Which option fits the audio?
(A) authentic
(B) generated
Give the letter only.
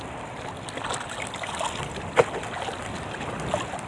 A